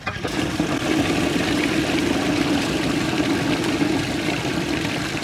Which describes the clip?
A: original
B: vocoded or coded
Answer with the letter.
A